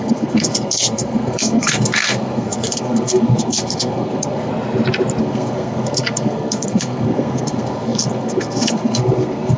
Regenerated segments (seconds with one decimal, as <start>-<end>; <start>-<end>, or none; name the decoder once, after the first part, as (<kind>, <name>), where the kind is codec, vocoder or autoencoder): 0.0-4.5 (codec, SNAC); 5.2-9.6